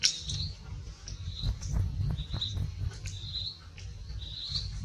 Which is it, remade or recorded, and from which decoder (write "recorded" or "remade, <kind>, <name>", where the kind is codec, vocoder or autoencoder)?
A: recorded